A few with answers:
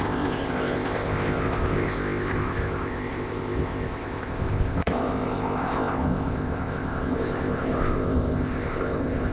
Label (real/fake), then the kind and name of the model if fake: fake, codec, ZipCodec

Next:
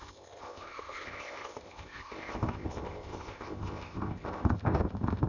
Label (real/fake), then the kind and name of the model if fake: fake, codec, ZipCodec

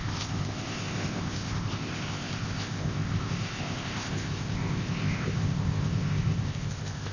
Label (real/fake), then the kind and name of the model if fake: fake, codec, ZipCodec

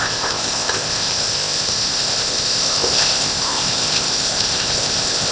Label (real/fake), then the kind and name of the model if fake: fake, codec, ZipCodec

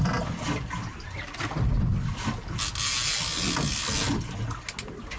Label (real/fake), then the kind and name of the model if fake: real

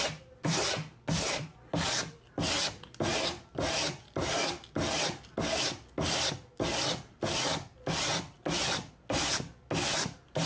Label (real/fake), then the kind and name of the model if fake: real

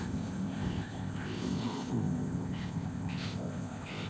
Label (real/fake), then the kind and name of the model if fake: fake, codec, ZipCodec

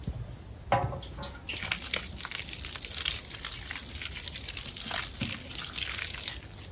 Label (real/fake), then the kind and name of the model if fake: real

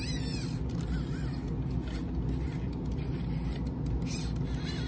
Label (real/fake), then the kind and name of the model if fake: real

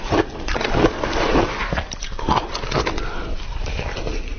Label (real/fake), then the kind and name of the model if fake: real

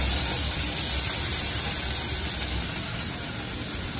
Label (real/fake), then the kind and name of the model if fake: real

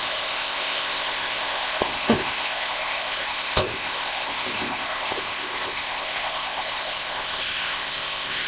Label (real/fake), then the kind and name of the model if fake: fake, codec, ZipCodec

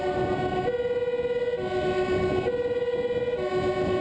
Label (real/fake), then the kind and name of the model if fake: real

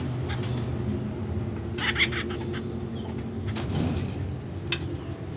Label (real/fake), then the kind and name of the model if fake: real